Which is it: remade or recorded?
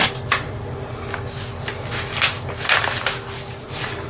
recorded